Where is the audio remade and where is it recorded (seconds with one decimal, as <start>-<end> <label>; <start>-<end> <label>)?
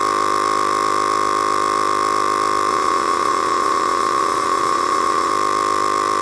0.0-2.7 recorded; 2.7-5.3 remade; 5.3-6.2 recorded